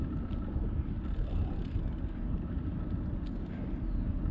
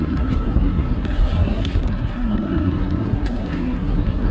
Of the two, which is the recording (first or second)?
first